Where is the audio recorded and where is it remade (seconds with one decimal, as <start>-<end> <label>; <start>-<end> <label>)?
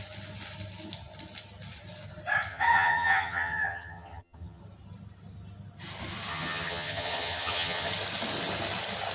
0.0-2.5 recorded; 2.5-4.6 remade; 4.6-6.3 recorded; 6.3-7.9 remade; 7.9-9.1 recorded